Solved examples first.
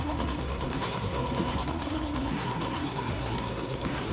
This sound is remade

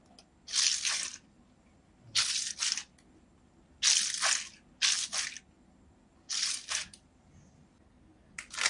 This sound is recorded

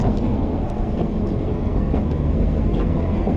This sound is remade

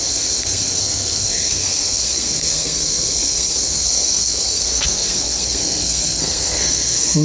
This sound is remade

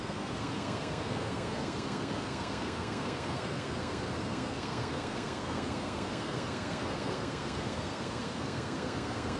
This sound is remade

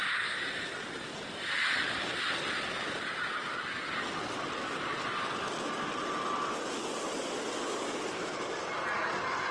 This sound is recorded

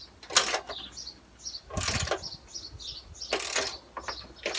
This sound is recorded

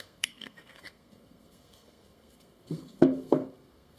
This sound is remade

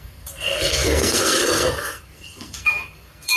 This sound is remade